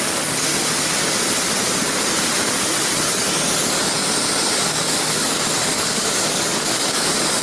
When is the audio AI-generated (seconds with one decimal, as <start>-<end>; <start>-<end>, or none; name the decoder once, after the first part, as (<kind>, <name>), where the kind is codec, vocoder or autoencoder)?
0.0-0.5 (codec, DAC); 4.6-7.4